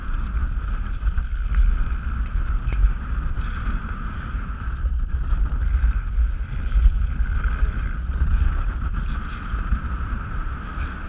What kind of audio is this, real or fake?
real